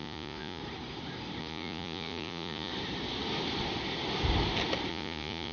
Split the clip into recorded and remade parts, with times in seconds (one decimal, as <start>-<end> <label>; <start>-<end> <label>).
0.0-0.6 remade; 0.6-1.4 recorded; 1.4-2.7 remade; 2.7-4.9 recorded; 4.9-5.5 remade